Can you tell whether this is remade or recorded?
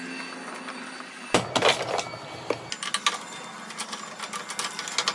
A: recorded